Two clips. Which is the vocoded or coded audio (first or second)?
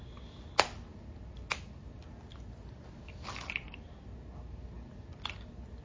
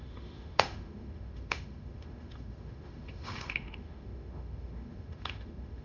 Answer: second